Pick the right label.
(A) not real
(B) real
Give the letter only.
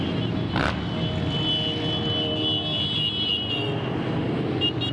B